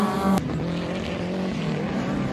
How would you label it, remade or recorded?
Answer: recorded